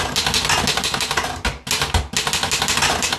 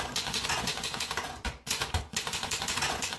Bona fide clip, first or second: first